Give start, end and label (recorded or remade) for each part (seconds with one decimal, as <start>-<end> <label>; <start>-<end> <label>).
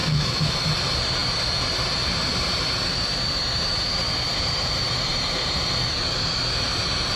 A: 0.0-0.5 remade; 0.5-7.2 recorded